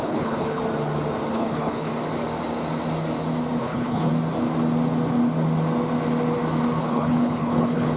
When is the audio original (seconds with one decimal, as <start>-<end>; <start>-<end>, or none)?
0.6-1.3; 1.9-3.6; 4.1-6.8